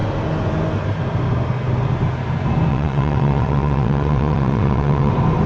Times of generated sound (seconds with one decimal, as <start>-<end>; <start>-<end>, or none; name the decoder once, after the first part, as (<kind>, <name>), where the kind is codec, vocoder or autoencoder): 2.7-5.1 (vocoder, WaveNeXt)